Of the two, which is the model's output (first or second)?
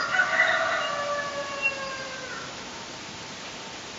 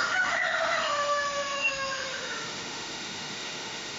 second